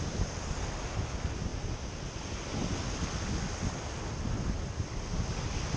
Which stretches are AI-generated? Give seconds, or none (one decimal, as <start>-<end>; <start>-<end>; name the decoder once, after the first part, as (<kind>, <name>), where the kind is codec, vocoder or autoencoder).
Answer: none